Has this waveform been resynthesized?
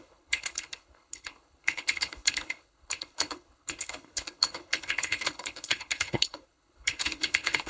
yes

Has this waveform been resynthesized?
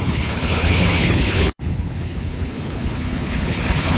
yes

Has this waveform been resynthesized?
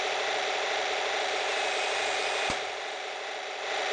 no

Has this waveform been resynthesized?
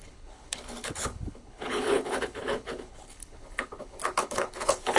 yes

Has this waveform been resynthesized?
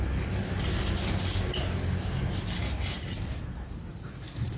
no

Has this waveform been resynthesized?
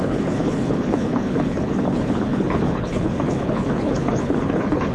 yes